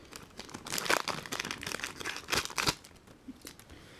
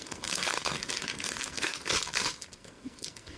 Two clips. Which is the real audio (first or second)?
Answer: first